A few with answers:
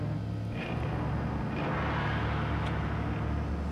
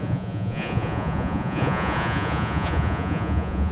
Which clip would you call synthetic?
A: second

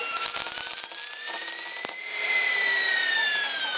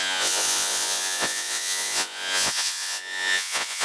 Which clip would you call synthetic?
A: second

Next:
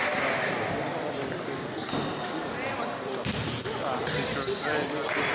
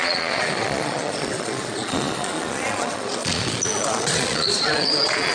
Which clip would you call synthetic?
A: second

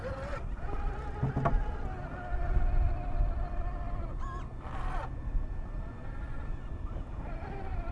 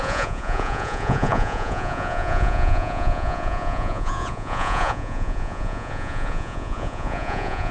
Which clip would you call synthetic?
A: second